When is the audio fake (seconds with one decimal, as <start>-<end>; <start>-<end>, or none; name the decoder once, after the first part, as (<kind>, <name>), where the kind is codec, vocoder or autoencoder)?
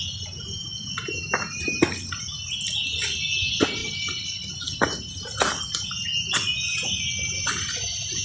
3.8-4.5 (vocoder, BigVGAN v2)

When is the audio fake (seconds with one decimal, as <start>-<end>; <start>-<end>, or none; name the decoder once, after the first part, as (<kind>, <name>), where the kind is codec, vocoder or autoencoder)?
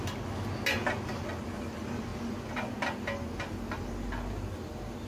none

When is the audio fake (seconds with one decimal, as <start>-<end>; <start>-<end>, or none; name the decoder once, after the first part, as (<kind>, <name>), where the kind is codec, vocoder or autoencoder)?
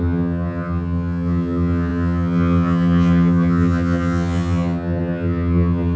0.0-6.0 (vocoder, HiFi-GAN)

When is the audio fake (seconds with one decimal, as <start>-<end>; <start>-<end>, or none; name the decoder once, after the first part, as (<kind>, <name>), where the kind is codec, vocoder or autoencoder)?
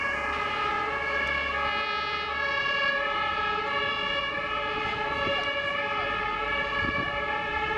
0.0-0.7 (vocoder, BigVGAN v2); 2.6-3.8; 4.3-7.8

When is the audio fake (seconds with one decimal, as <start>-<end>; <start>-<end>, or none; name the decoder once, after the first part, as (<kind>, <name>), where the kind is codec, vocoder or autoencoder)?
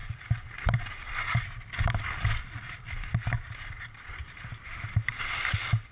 none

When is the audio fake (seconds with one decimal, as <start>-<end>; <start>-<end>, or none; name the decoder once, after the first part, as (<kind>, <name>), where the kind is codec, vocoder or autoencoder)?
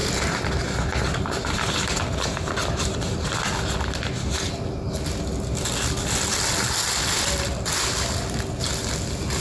none